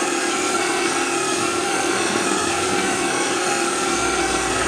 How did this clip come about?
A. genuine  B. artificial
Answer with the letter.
B